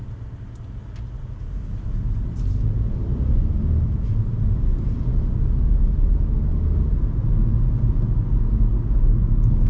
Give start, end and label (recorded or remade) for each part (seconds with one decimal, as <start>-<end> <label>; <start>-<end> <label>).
0.0-1.8 remade; 1.8-4.7 recorded; 4.7-5.4 remade; 5.4-9.7 recorded

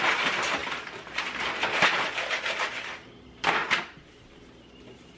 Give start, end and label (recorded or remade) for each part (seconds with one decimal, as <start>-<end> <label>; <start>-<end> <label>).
0.0-5.2 recorded

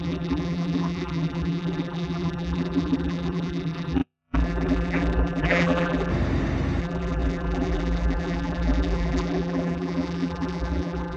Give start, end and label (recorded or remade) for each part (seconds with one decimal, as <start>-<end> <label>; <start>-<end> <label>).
0.0-6.1 remade; 6.1-6.8 recorded; 6.8-11.2 remade

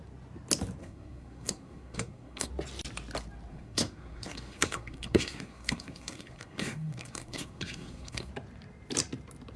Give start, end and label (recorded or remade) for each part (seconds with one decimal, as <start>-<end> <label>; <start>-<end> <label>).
0.0-0.8 recorded; 0.8-2.5 remade; 2.5-3.5 recorded; 3.5-8.3 remade; 8.3-9.6 recorded

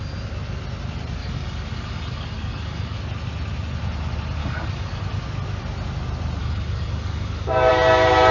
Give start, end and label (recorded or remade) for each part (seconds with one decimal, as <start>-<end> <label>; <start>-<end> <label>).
0.0-1.2 recorded; 1.2-3.0 remade; 3.0-4.4 recorded; 4.4-5.0 remade; 5.0-6.4 recorded; 6.4-7.7 remade; 7.7-8.3 recorded

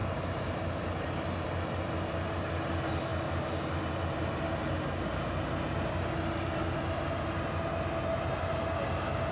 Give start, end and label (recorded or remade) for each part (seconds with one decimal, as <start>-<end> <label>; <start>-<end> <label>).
0.0-9.3 recorded

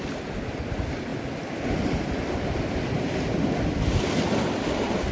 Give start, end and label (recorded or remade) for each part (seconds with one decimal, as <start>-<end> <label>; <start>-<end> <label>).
0.0-5.1 recorded